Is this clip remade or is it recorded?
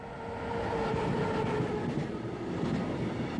remade